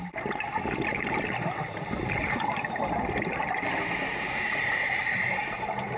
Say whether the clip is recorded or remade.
recorded